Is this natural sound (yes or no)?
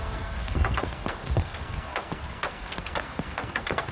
no